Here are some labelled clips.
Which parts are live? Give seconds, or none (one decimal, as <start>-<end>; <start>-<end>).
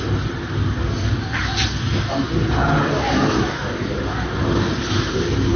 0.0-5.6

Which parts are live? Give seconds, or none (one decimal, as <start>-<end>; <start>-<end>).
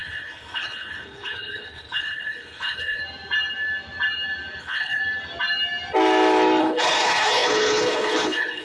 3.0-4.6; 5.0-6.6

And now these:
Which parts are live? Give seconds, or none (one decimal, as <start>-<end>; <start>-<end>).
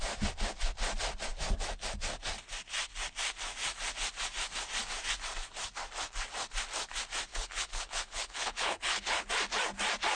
0.0-7.3; 9.3-10.1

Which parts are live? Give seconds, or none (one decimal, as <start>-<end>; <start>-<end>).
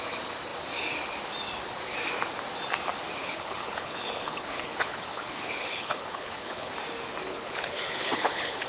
0.0-3.2; 6.7-7.3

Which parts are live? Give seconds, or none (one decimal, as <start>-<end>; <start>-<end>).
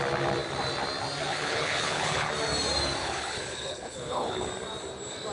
0.0-1.3; 2.3-3.0; 4.5-5.3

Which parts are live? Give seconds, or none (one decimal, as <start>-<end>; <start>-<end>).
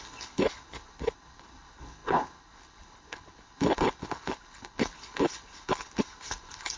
none